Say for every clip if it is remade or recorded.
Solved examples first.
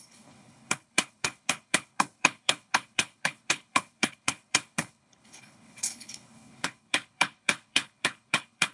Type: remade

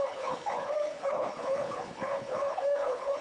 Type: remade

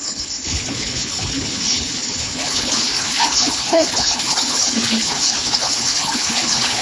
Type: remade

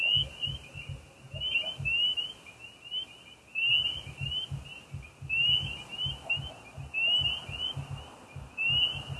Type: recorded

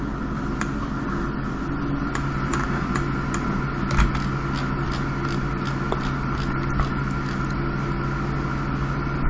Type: recorded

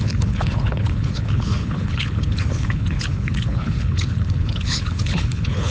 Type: remade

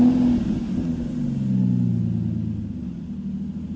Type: recorded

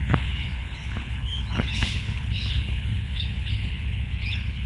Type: remade